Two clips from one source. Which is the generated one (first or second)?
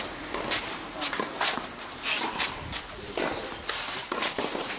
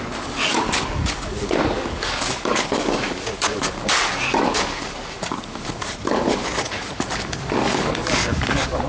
second